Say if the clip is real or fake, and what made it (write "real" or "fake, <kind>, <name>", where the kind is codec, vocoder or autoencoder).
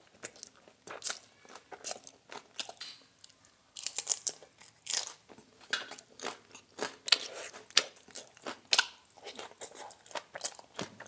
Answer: real